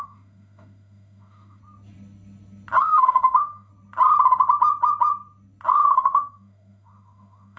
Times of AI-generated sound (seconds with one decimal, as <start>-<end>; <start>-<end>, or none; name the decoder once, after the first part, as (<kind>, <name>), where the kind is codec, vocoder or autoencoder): 0.0-1.6 (autoencoder, DAC-VAE); 2.8-3.7; 5.7-7.6